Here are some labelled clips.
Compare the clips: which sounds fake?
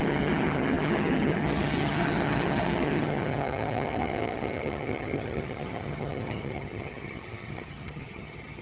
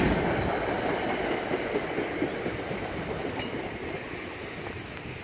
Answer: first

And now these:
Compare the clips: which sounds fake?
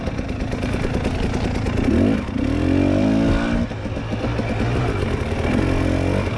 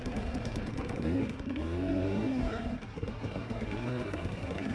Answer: second